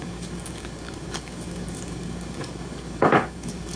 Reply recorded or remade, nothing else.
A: remade